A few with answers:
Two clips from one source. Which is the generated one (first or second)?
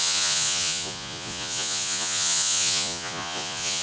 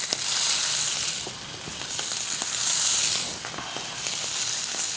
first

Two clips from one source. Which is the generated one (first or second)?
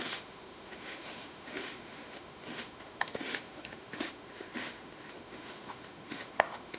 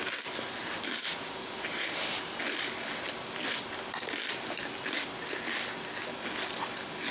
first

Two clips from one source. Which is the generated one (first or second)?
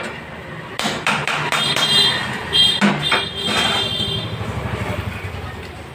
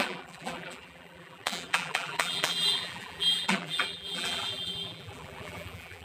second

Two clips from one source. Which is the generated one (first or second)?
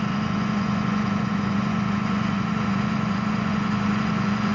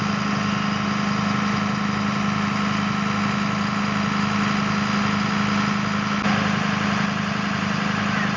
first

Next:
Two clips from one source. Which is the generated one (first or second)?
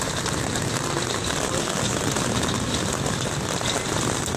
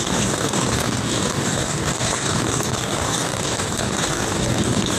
second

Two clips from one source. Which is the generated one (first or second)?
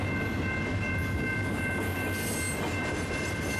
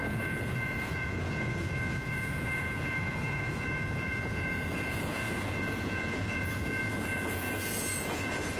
second